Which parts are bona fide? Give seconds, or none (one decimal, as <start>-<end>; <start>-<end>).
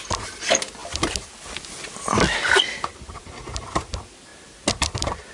0.0-5.3